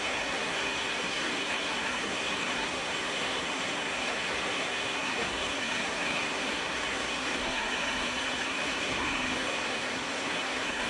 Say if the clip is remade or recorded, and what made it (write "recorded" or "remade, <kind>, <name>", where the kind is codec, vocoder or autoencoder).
remade, codec, SNAC